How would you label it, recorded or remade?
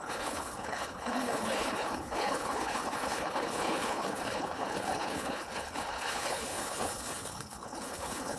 remade